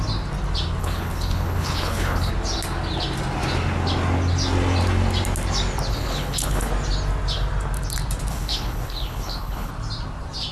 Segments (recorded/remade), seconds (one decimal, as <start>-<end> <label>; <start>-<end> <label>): 0.0-0.8 recorded; 0.8-2.3 remade; 2.3-5.9 recorded; 5.9-6.7 remade; 6.7-8.3 recorded; 8.3-9.7 remade; 9.7-10.5 recorded